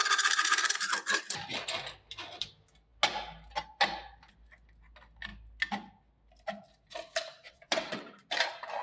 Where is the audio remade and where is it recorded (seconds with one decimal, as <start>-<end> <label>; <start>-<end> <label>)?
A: 0.0-7.4 recorded; 7.4-8.2 remade; 8.2-8.8 recorded